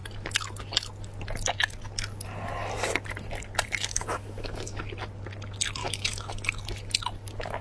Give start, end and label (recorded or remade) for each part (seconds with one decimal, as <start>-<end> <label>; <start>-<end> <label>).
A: 0.0-3.9 recorded; 3.9-4.8 remade; 4.8-5.8 recorded; 5.8-6.3 remade; 6.3-7.6 recorded